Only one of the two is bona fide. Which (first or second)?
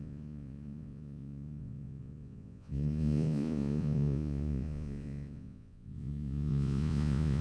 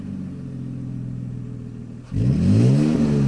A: second